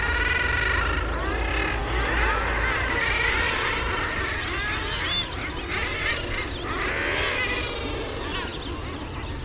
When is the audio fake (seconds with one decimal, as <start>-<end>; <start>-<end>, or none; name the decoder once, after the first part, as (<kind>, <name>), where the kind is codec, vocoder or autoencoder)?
none